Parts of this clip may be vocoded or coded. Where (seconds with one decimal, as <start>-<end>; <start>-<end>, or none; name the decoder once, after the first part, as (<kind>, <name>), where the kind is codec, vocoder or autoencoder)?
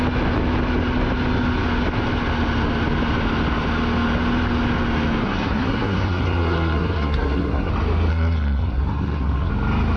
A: 5.2-7.7 (codec, SNAC); 8.1-9.5